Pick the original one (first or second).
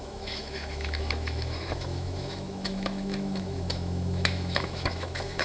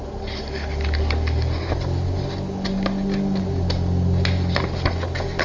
second